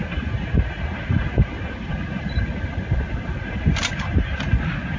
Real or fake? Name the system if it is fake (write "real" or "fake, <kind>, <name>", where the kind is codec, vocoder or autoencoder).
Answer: real